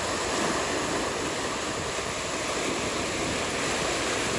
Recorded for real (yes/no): yes